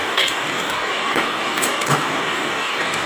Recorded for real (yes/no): no